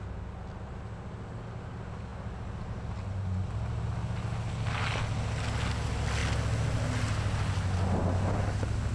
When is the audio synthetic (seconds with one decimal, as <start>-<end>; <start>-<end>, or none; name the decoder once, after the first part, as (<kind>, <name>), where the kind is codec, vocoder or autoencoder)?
none